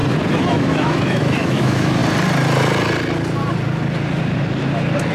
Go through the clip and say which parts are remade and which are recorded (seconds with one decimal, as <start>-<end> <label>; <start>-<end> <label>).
0.0-0.5 recorded; 0.5-2.0 remade; 2.0-5.1 recorded